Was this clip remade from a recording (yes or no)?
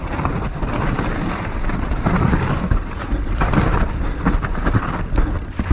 no